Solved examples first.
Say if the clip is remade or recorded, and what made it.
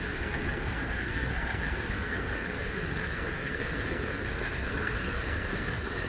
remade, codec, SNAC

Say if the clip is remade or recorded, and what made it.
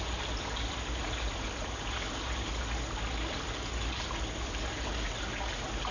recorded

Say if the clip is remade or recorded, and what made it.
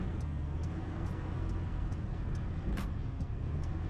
remade, codec, SNAC